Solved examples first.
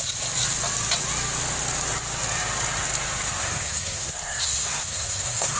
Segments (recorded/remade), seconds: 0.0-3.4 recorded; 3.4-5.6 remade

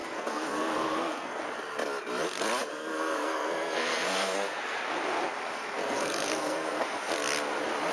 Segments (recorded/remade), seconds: 0.0-1.4 remade; 1.4-2.7 recorded; 2.7-4.8 remade; 4.8-5.8 recorded; 5.8-7.1 remade; 7.1-7.9 recorded

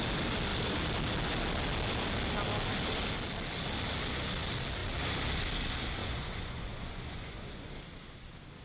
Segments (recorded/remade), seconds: 0.0-6.0 recorded; 6.0-7.7 remade; 7.7-8.6 recorded

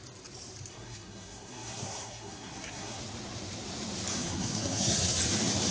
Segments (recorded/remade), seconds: 0.0-0.7 recorded; 0.7-3.0 remade; 3.0-4.1 recorded; 4.1-5.2 remade; 5.2-5.7 recorded